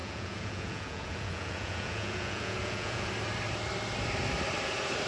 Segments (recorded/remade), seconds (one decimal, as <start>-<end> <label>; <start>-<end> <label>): 0.0-3.1 remade; 3.1-5.1 recorded